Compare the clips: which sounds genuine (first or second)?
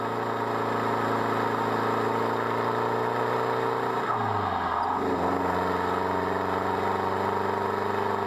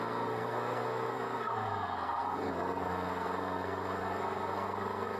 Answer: first